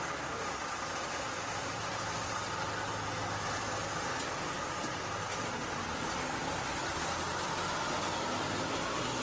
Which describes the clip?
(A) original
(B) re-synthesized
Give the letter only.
A